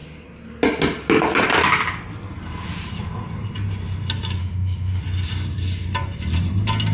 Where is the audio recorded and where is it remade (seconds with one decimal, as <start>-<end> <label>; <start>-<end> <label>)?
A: 0.0-4.4 recorded; 4.4-5.0 remade; 5.0-6.9 recorded